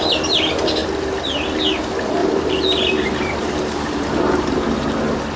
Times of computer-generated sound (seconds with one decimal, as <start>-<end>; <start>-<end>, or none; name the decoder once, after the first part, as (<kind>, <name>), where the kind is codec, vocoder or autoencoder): 2.2-5.0 (vocoder, BigVGAN v2)